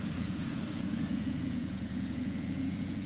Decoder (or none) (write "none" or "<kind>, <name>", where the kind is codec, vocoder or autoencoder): vocoder, Vocos